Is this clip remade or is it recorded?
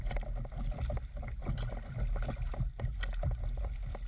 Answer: recorded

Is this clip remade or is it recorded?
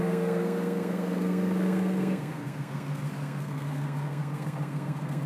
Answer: remade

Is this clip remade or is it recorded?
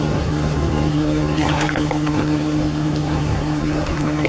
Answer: remade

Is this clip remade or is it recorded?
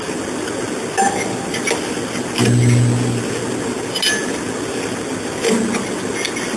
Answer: recorded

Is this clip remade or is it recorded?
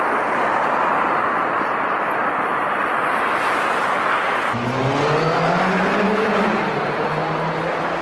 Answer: recorded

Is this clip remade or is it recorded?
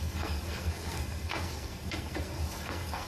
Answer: remade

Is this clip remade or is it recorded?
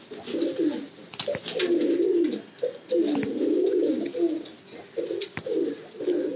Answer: recorded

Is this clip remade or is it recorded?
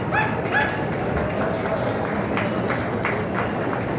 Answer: recorded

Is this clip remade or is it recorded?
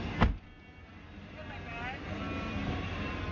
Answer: recorded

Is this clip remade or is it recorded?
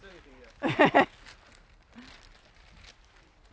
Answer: recorded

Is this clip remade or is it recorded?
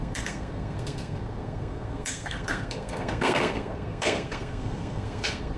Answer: remade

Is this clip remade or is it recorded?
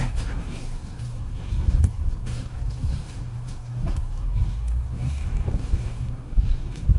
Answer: remade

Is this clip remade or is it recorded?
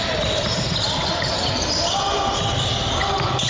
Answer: recorded